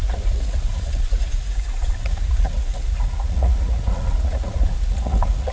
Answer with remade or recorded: remade